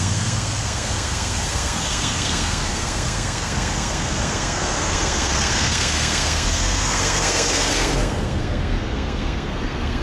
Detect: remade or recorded remade